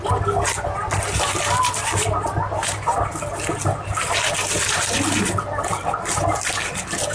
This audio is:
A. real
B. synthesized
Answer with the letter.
A